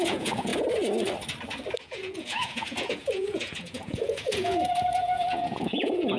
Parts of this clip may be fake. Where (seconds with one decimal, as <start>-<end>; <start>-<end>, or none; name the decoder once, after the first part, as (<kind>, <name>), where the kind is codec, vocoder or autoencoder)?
0.0-0.5 (vocoder, Vocos); 1.8-6.2